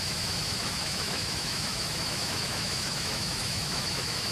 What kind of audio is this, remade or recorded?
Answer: remade